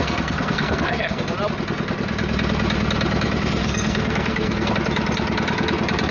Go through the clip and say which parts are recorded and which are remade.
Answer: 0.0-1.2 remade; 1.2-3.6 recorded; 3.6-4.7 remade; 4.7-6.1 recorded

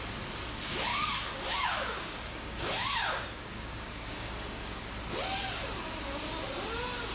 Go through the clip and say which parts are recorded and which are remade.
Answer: 0.0-0.9 recorded; 0.9-4.9 remade; 4.9-7.1 recorded

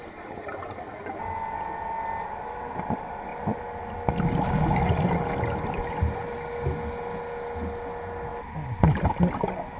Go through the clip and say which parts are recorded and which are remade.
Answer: 0.0-3.3 recorded; 3.3-4.1 remade; 4.1-9.8 recorded

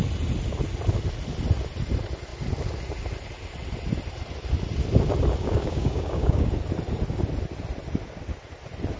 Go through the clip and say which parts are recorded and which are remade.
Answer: 0.0-5.4 recorded; 5.4-6.5 remade; 6.5-9.0 recorded

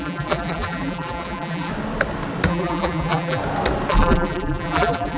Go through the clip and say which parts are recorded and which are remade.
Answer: 0.0-1.7 remade; 1.7-2.5 recorded; 2.5-3.4 remade; 3.4-3.9 recorded; 3.9-5.2 remade

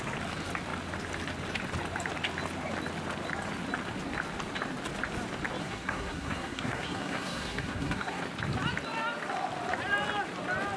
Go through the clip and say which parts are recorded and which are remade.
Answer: 0.0-5.6 recorded; 5.6-8.2 remade; 8.2-10.8 recorded

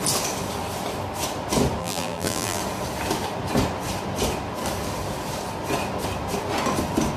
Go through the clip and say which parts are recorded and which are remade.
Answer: 0.0-1.8 recorded; 1.8-2.6 remade; 2.6-7.2 recorded

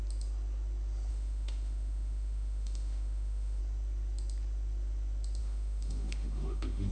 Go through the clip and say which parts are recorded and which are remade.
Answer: 0.0-1.1 recorded; 1.1-3.6 remade; 3.6-5.4 recorded; 5.4-6.9 remade